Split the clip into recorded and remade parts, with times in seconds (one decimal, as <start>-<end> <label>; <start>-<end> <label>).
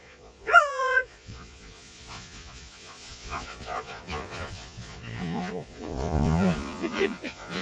0.0-7.6 remade